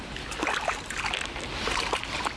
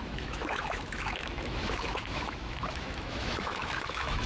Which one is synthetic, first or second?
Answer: second